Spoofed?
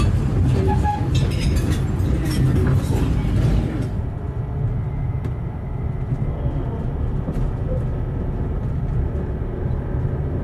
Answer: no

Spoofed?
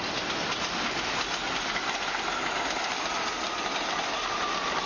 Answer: no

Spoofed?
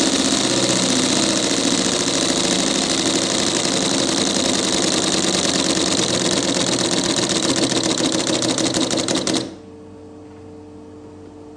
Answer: no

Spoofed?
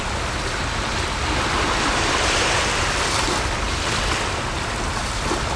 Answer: no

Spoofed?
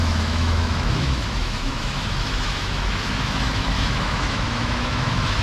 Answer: yes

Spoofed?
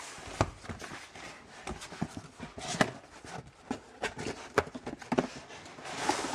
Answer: no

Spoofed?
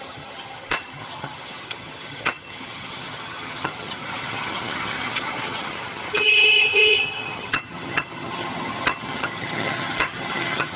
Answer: yes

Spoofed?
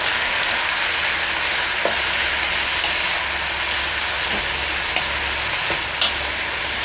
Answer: no